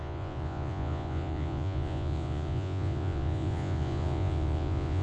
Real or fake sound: fake